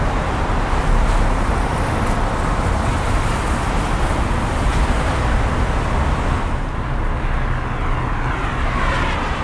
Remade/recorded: recorded